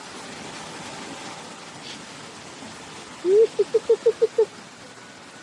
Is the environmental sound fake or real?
real